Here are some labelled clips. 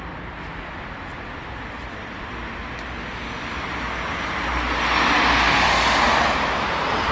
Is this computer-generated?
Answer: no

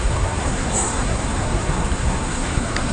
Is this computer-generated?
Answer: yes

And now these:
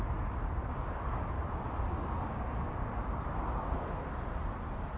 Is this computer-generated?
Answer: no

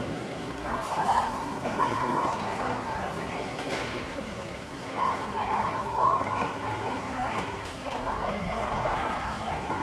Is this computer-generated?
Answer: yes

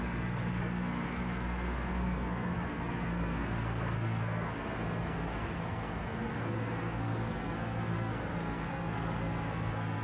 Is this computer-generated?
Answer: yes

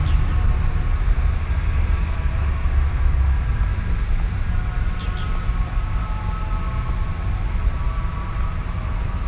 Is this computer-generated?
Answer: no